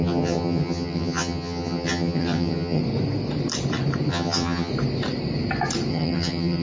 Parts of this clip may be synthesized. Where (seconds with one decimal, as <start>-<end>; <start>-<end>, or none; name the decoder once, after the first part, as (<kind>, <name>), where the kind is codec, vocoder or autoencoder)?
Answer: 0.0-2.8 (vocoder, HiFi-GAN); 4.1-4.7; 5.9-6.6